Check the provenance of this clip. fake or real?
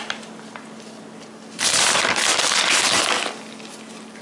real